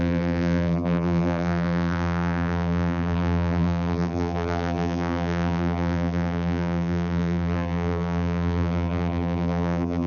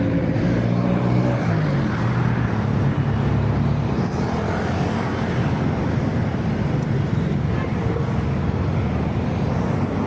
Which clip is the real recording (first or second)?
second